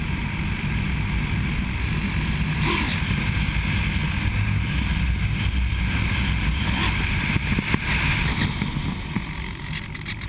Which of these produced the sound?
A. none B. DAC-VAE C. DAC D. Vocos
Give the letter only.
A